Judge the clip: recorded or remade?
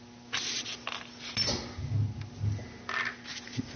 recorded